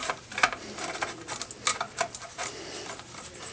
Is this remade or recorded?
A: recorded